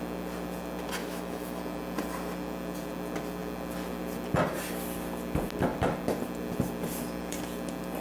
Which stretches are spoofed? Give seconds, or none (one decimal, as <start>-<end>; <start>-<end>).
1.0-1.6